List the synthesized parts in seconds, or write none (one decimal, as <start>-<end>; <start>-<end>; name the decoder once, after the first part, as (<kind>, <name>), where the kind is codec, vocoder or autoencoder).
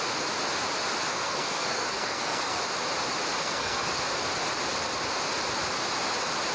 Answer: 1.1-2.6 (codec, SNAC); 3.4-3.9